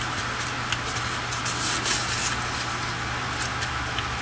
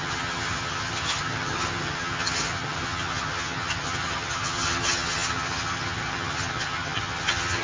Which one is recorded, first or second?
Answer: first